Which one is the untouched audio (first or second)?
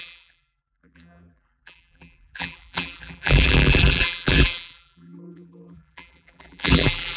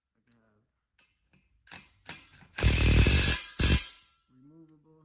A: second